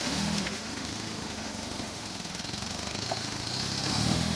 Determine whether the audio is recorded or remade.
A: remade